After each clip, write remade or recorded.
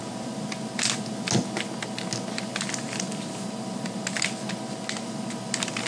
recorded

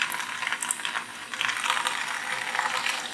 recorded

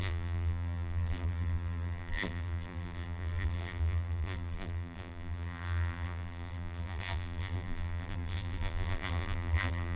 remade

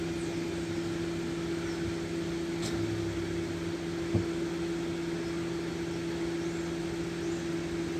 recorded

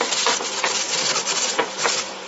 remade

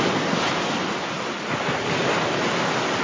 recorded